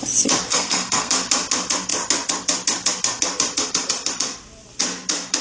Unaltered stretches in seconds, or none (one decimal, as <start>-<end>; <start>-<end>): 0.0-0.5; 1.1-5.4